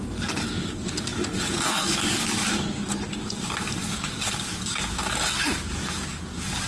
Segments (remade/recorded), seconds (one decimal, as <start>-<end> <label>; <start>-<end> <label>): 0.0-6.7 remade

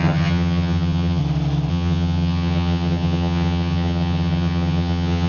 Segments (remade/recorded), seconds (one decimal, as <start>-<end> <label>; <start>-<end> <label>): 0.0-1.2 remade; 1.2-1.7 recorded; 1.7-5.3 remade

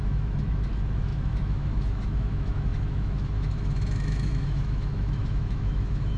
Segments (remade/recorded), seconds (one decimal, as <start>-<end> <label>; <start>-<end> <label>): 0.0-6.2 remade